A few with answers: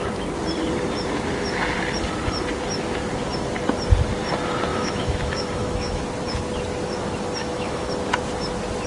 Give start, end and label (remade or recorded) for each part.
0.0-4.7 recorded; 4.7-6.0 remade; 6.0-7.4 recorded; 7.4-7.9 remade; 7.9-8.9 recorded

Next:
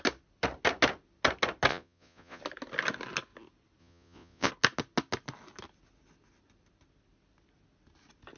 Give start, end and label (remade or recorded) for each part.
0.0-1.7 recorded; 1.7-2.4 remade; 2.4-3.8 recorded; 3.8-4.5 remade; 4.5-8.4 recorded

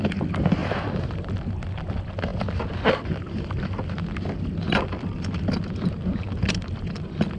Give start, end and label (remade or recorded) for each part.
0.0-7.4 recorded

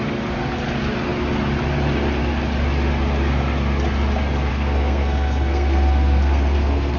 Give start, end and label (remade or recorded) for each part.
0.0-4.5 recorded; 4.5-7.0 remade

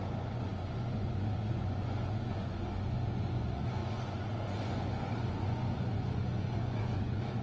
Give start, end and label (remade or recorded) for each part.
0.0-7.4 remade

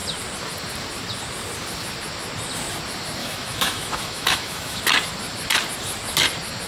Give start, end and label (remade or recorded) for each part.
0.0-3.2 recorded; 3.2-4.8 remade; 4.8-6.7 recorded

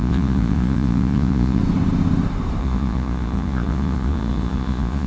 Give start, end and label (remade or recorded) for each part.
0.0-1.6 remade; 1.6-2.6 recorded; 2.6-5.1 remade